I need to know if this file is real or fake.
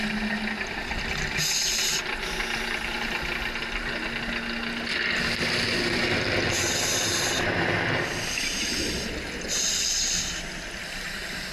real